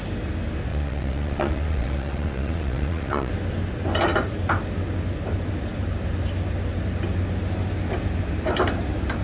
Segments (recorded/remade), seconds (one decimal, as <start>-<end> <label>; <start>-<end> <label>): 0.0-0.7 recorded; 0.7-3.3 remade; 3.3-9.2 recorded